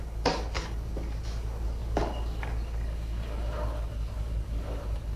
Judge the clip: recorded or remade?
remade